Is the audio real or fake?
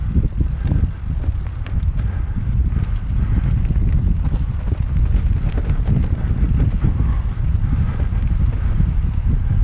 real